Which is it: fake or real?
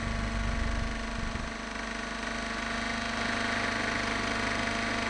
real